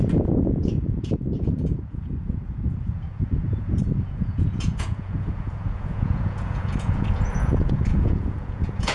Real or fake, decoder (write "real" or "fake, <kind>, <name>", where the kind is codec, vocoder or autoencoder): fake, vocoder, Vocos